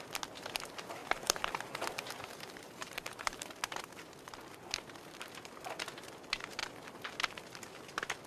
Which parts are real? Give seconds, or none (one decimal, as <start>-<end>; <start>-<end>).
0.0-1.0; 3.5-8.3